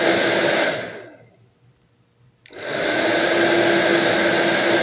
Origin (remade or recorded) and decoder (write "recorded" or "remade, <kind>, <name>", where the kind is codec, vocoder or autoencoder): recorded